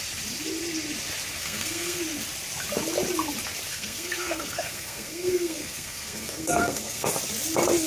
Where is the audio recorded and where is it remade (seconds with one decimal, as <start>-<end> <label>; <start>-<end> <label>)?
0.0-1.4 recorded; 1.4-2.0 remade; 2.0-3.7 recorded; 3.7-7.1 remade; 7.1-7.9 recorded